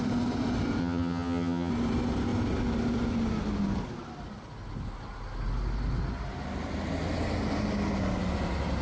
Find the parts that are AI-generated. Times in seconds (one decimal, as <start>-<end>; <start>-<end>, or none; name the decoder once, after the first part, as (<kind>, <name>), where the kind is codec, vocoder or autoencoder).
0.8-1.7 (vocoder, HiFi-GAN)